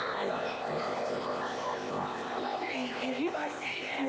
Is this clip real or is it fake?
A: fake